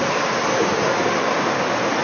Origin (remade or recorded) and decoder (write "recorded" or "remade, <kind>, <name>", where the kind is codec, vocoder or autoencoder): recorded